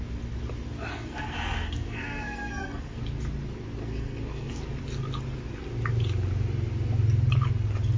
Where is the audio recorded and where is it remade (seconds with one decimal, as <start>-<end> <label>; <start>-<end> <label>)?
0.0-0.9 recorded; 0.9-3.0 remade; 3.0-3.8 recorded; 3.8-4.6 remade; 4.6-8.0 recorded